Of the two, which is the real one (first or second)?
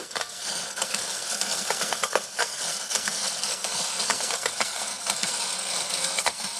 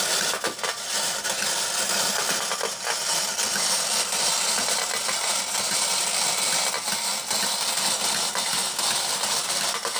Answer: second